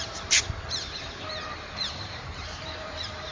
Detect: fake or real fake